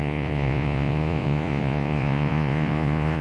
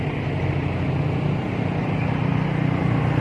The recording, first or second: second